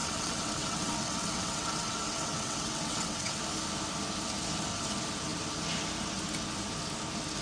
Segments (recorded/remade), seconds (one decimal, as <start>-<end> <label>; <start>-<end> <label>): 0.0-3.4 remade; 3.4-7.4 recorded